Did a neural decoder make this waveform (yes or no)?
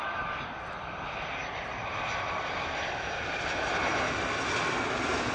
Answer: yes